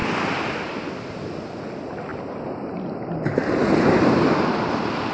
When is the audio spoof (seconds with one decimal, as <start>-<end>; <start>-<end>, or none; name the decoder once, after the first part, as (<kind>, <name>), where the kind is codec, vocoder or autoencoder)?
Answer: none